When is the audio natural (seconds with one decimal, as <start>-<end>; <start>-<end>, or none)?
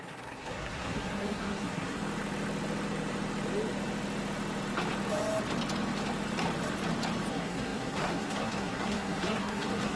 2.0-7.3